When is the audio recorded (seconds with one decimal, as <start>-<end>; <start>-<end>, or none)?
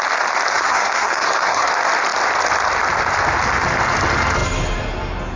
0.0-0.5; 1.7-5.4